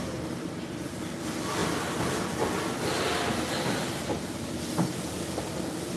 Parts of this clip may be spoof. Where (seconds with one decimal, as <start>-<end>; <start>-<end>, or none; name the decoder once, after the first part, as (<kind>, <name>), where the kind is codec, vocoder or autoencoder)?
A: none